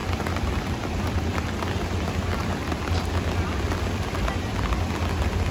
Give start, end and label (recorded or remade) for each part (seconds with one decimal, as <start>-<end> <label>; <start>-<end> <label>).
0.0-1.5 remade; 1.5-2.4 recorded; 2.4-4.6 remade; 4.6-5.5 recorded